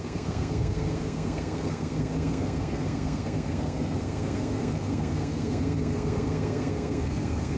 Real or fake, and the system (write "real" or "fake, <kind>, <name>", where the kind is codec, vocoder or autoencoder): fake, codec, SNAC